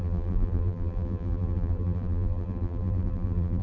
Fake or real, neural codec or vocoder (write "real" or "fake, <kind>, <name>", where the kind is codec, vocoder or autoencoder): fake, vocoder, BigVGAN v2